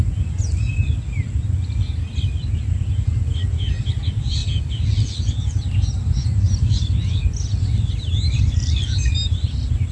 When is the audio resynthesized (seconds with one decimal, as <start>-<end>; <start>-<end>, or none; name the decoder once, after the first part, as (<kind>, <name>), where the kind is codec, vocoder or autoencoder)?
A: none